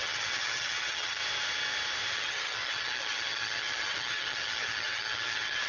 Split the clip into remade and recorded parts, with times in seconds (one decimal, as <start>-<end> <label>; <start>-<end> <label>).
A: 0.0-1.2 remade; 1.2-2.1 recorded; 2.1-5.7 remade